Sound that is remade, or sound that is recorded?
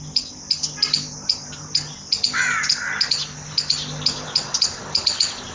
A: recorded